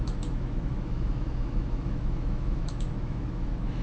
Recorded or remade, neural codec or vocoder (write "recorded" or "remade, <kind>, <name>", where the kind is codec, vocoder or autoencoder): remade, autoencoder, DAC-VAE